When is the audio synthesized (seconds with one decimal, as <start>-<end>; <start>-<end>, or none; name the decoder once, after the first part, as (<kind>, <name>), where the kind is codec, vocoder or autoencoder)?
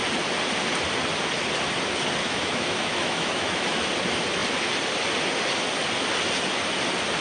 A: 2.2-3.9 (autoencoder, DAC-VAE)